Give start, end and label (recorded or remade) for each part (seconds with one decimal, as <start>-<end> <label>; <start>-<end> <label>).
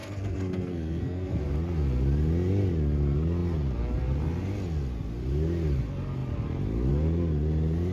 0.0-1.4 remade; 1.4-7.9 recorded